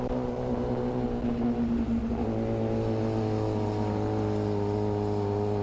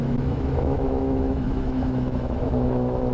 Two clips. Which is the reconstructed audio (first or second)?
second